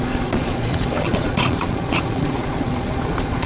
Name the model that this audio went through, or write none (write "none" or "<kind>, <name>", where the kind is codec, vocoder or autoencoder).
vocoder, Vocos